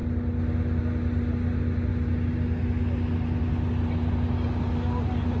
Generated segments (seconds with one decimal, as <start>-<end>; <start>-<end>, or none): none